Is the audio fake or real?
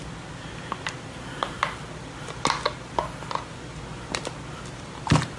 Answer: real